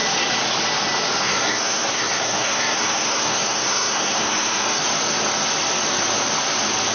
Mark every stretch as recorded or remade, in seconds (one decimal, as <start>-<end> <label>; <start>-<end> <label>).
0.0-1.2 recorded; 1.2-4.8 remade; 4.8-6.9 recorded